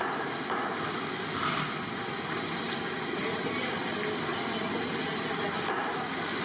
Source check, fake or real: real